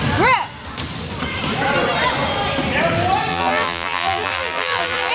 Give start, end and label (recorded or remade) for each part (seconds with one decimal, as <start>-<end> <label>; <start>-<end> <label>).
0.0-3.3 recorded; 3.3-5.1 remade

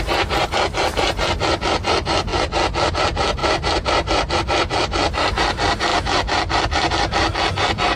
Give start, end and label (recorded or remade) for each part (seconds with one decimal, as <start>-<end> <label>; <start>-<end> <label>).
0.0-8.0 recorded

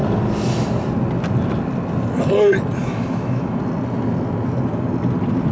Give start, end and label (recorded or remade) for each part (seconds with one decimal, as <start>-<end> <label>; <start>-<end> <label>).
0.0-2.8 recorded; 2.8-3.6 remade; 3.6-5.5 recorded

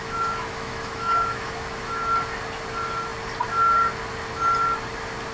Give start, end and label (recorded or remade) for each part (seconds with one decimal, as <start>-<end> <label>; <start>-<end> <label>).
0.0-2.0 remade; 2.0-5.3 recorded

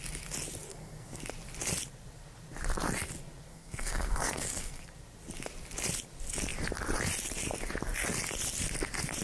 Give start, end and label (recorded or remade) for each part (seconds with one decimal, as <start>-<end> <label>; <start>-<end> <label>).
0.0-0.7 recorded; 0.7-1.2 remade; 1.2-3.5 recorded; 3.5-4.8 remade; 4.8-9.2 recorded

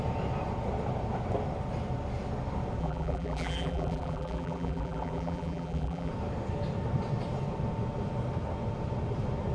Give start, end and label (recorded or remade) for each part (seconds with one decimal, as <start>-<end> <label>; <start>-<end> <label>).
0.0-2.8 recorded; 2.8-6.1 remade; 6.1-9.5 recorded

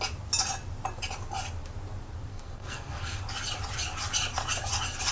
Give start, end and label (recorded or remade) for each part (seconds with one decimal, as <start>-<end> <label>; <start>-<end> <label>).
0.0-2.3 recorded; 2.3-3.2 remade; 3.2-5.1 recorded